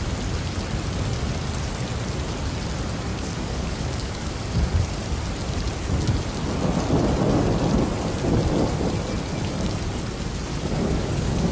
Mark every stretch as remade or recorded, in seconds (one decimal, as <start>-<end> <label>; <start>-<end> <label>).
0.0-3.1 recorded; 3.1-4.9 remade; 4.9-10.5 recorded; 10.5-11.5 remade